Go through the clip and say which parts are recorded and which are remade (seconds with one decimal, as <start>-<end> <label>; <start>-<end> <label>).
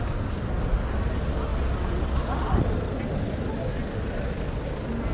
0.0-5.1 recorded